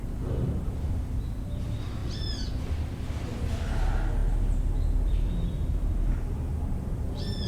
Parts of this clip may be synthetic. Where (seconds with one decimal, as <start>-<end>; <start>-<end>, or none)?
none

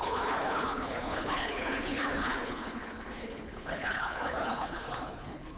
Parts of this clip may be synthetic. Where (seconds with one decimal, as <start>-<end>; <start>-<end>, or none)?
0.0-5.6

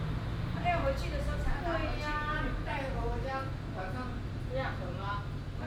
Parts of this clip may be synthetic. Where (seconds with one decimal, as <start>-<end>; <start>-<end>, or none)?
none

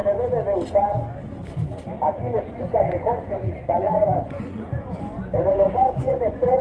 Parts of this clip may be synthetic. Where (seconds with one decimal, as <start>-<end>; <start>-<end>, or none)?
2.4-6.6

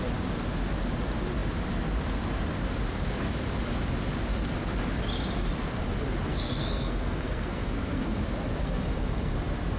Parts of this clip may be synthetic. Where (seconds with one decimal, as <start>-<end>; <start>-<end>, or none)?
6.3-8.2; 8.6-9.3

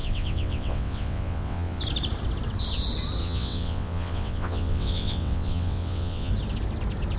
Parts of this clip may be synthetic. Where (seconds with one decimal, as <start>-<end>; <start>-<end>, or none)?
0.0-1.8; 3.2-6.3